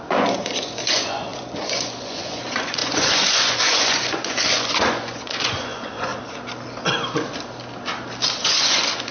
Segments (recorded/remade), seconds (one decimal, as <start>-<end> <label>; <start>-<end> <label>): 0.0-6.1 remade; 6.1-8.4 recorded; 8.4-9.1 remade